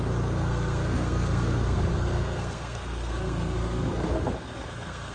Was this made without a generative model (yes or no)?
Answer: no